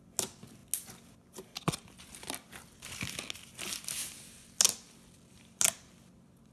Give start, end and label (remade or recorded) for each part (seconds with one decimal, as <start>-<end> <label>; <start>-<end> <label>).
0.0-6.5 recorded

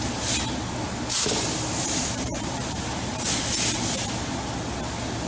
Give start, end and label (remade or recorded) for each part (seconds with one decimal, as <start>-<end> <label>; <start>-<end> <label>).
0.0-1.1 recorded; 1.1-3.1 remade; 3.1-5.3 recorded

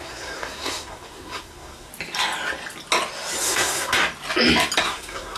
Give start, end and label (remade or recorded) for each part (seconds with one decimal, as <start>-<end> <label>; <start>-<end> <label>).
0.0-1.9 remade; 1.9-3.4 recorded; 3.4-4.0 remade; 4.0-4.8 recorded; 4.8-5.4 remade

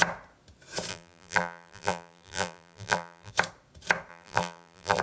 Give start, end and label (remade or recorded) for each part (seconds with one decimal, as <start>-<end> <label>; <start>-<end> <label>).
0.0-0.9 recorded; 0.9-3.3 remade; 3.3-4.1 recorded; 4.1-5.0 remade